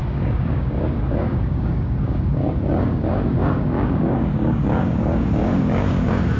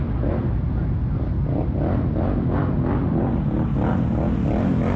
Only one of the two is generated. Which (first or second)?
first